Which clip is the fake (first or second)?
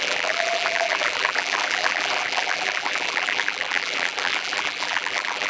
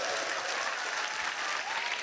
first